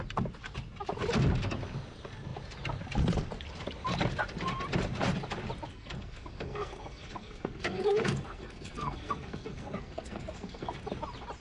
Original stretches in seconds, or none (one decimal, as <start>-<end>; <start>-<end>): 0.0-5.7; 10.8-11.4